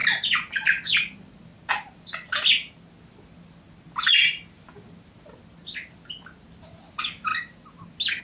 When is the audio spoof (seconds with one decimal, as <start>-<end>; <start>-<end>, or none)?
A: none